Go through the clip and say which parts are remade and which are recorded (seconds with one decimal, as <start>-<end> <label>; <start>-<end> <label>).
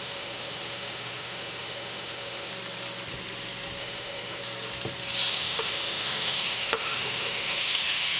0.0-2.5 remade; 2.5-3.8 recorded; 3.8-4.4 remade; 4.4-5.3 recorded; 5.3-8.2 remade